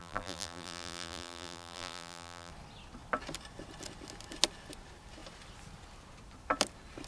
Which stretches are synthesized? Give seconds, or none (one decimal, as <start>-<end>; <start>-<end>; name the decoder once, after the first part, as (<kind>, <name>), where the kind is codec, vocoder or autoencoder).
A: 0.0-2.5 (vocoder, BigVGAN v2)